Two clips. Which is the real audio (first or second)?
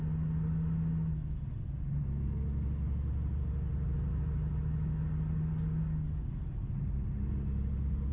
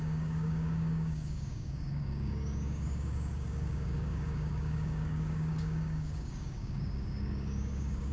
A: first